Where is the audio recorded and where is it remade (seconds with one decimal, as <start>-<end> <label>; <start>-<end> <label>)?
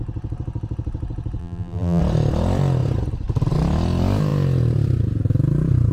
0.0-1.4 recorded; 1.4-2.0 remade; 2.0-5.9 recorded